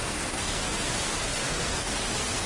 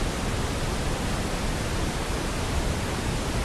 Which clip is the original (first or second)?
second